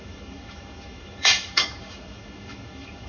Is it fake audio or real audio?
fake